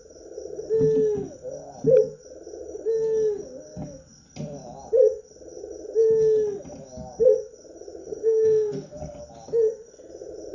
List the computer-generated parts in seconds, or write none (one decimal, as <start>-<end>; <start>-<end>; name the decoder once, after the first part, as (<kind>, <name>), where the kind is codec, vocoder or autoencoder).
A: 8.0-9.2 (codec, SNAC)